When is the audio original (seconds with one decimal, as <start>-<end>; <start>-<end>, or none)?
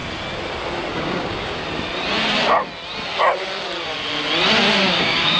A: 0.0-0.9; 1.6-4.8